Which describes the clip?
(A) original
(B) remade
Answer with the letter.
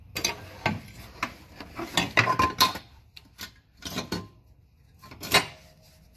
A